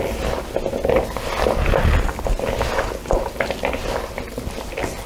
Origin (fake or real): real